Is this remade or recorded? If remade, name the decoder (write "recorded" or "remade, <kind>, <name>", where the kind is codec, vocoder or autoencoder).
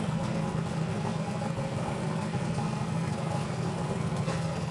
remade, codec, SNAC